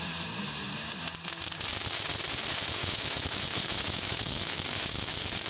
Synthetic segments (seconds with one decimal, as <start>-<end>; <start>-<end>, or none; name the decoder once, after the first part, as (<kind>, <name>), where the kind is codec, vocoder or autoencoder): 2.8-5.5 (autoencoder, DAC-VAE)